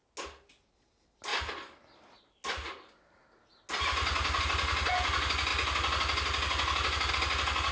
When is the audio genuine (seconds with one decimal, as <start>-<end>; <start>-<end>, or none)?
0.0-7.7